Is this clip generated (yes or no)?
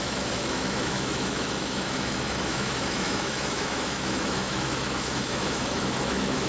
yes